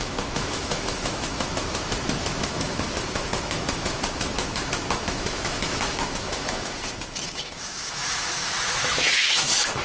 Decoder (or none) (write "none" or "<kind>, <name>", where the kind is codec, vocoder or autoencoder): autoencoder, DAC-VAE